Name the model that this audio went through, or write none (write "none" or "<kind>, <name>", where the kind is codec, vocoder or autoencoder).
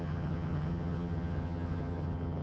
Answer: vocoder, HiFi-GAN